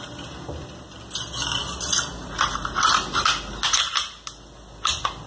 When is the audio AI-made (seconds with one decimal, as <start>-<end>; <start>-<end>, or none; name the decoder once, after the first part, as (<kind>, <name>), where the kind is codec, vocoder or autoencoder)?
none